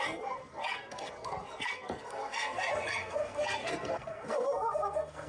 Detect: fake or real fake